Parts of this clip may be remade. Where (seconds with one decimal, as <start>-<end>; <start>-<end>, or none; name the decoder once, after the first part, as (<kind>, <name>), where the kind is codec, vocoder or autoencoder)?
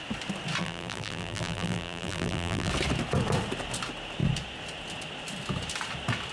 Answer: 0.6-2.7 (vocoder, BigVGAN v2)